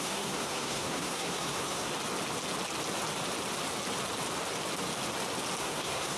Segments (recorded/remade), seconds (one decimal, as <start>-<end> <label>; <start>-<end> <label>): 0.0-1.9 remade; 1.9-5.6 recorded; 5.6-6.2 remade